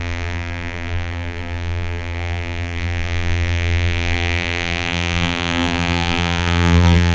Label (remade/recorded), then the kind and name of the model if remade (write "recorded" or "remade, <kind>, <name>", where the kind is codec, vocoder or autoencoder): remade, vocoder, BigVGAN v2